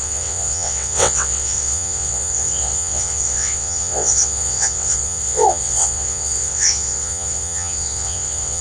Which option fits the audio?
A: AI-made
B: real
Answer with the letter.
A